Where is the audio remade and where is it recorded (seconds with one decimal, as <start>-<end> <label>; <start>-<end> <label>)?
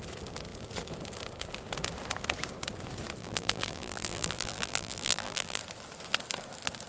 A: 0.0-3.2 recorded; 3.2-5.6 remade; 5.6-6.9 recorded